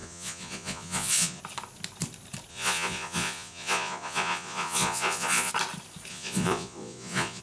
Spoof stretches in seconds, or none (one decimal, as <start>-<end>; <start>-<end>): 0.0-1.4; 2.5-5.5; 6.1-7.4